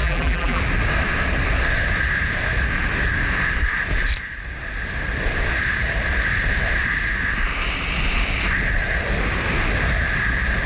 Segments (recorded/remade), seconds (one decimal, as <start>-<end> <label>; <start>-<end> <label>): 0.0-0.6 remade; 0.6-10.7 recorded